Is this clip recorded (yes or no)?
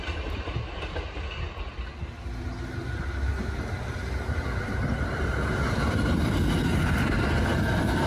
yes